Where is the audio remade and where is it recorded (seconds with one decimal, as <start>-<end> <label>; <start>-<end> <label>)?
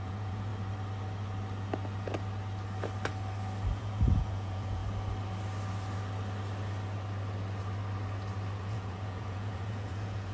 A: 0.0-0.5 remade; 0.5-3.8 recorded; 3.8-4.8 remade; 4.8-8.6 recorded; 8.6-10.3 remade